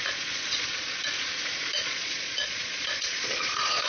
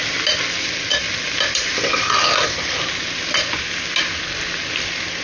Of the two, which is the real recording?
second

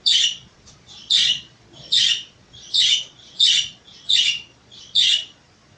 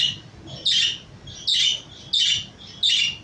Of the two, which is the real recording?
second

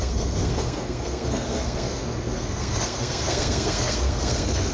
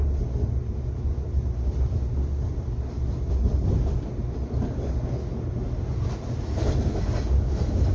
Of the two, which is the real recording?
second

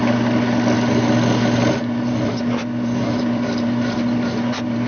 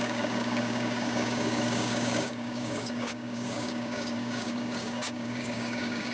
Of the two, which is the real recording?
first